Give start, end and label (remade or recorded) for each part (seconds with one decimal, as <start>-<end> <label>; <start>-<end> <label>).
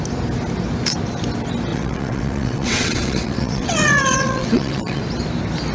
0.0-1.7 recorded; 1.7-5.0 remade; 5.0-5.7 recorded